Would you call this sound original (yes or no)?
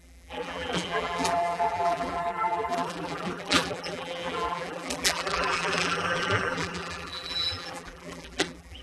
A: no